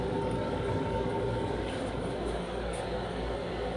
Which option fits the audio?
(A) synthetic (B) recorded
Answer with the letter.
A